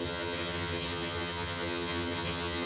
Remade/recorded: remade